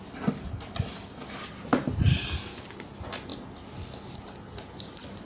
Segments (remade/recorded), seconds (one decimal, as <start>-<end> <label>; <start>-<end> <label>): 0.0-5.3 recorded